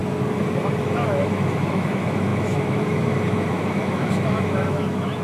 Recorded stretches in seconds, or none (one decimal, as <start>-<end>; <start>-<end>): 0.0-0.8